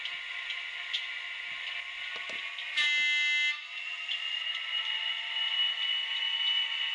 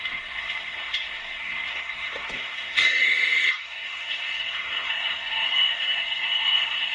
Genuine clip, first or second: first